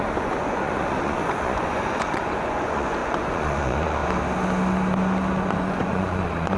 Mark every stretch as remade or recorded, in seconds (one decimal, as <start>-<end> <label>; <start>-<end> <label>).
0.0-4.0 remade; 4.0-5.4 recorded; 5.4-6.6 remade